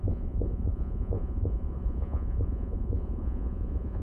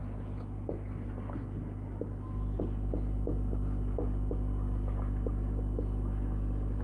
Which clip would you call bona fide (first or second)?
second